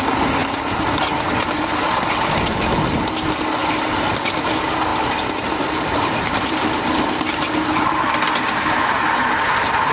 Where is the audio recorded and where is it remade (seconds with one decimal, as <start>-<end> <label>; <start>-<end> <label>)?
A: 0.0-9.9 recorded